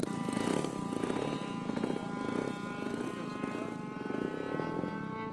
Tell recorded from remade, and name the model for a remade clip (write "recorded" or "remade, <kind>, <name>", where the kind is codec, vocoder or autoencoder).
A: recorded